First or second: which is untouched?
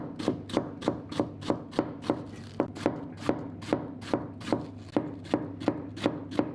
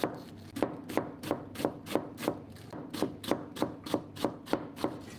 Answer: first